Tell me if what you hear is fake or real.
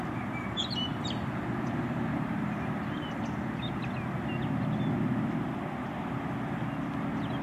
real